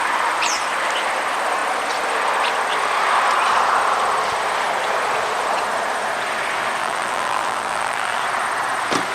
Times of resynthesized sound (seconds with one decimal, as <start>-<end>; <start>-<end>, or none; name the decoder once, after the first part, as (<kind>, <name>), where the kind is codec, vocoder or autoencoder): 6.8-8.2 (vocoder, BigVGAN v2)